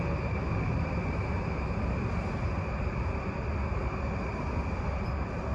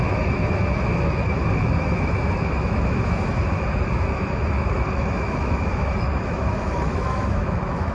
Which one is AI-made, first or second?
second